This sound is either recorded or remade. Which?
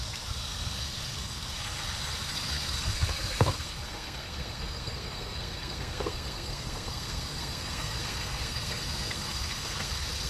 remade